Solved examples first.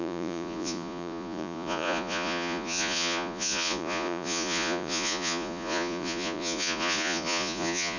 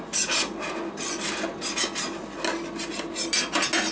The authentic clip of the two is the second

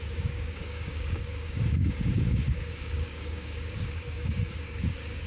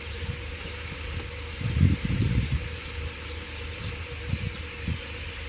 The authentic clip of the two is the second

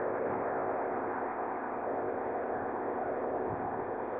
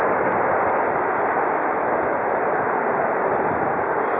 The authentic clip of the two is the second